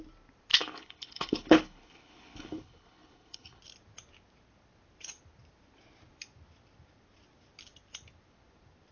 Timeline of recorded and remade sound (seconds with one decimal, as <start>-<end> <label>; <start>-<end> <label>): 0.0-0.5 recorded; 0.5-3.6 remade; 3.6-8.9 recorded